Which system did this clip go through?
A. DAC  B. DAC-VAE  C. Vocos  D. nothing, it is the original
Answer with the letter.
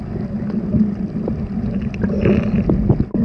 D